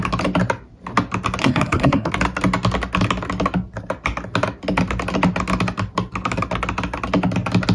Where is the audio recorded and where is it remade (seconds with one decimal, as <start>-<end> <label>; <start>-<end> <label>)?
0.0-1.4 recorded; 1.4-2.1 remade; 2.1-7.7 recorded